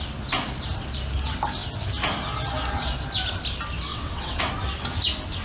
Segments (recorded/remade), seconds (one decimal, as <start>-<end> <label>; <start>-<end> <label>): 0.0-3.9 recorded; 3.9-4.5 remade; 4.5-5.4 recorded